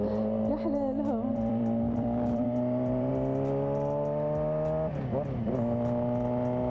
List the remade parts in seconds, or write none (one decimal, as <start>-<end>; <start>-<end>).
1.3-3.1